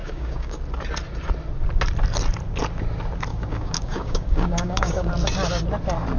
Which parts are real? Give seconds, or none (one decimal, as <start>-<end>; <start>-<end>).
0.6-3.3; 5.1-6.2